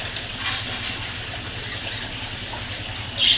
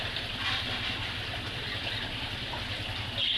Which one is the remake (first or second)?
second